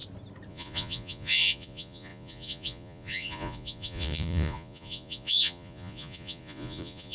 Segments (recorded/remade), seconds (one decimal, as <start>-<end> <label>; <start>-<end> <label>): 0.0-0.5 recorded; 0.5-7.1 remade